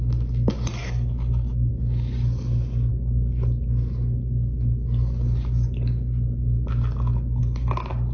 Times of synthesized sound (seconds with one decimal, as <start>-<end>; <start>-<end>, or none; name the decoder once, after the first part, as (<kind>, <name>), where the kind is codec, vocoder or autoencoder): 0.8-1.7 (codec, DAC)